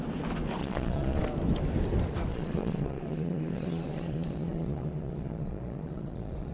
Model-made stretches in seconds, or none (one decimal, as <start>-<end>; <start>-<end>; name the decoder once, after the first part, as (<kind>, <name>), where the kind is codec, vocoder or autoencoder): 0.6-1.2 (vocoder, Vocos); 2.3-6.5